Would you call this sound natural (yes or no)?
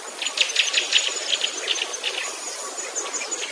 yes